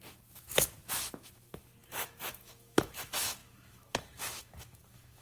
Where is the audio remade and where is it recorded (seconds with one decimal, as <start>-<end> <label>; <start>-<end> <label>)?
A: 0.0-5.2 remade